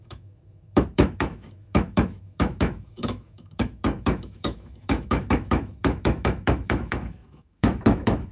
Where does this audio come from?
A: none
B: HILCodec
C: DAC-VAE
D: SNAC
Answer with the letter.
C